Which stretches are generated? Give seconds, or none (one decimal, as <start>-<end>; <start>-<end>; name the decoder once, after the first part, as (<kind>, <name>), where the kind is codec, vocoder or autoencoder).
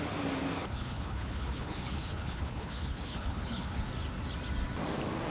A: 0.6-3.8 (codec, HILCodec)